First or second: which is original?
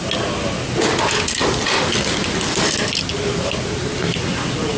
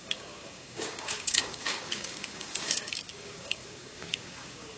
first